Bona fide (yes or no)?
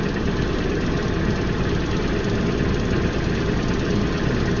yes